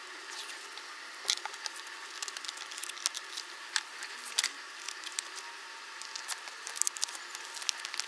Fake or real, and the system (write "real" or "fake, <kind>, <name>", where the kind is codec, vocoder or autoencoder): real